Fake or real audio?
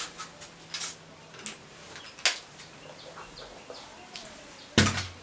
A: real